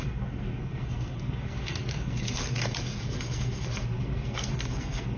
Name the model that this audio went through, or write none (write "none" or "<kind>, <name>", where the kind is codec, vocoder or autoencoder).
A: codec, SNAC